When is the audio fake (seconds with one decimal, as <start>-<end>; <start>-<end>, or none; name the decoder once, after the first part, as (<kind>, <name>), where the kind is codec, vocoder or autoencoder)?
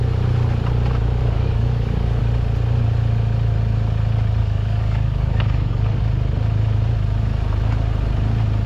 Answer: 1.2-2.2 (codec, DAC); 4.4-6.0